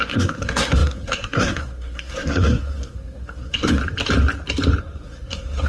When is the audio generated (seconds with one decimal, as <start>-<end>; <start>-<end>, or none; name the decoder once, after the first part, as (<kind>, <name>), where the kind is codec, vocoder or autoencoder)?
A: 0.0-3.8 (codec, SNAC); 4.8-5.7